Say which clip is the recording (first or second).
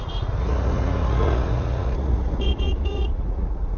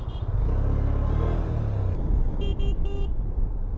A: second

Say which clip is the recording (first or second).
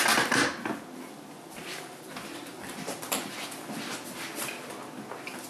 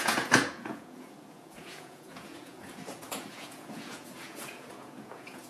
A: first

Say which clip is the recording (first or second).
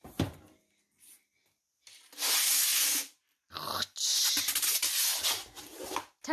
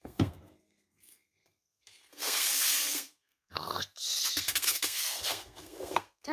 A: first